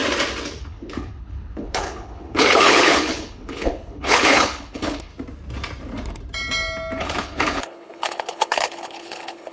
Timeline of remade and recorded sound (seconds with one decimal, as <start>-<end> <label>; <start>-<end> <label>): 0.0-0.6 recorded; 0.6-5.1 remade; 5.1-7.0 recorded; 7.0-9.5 remade